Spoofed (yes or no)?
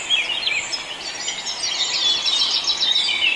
no